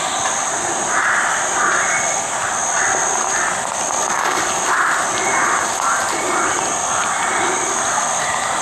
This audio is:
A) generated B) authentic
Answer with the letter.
B